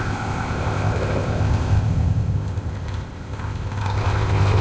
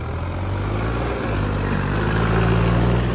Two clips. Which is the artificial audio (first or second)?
first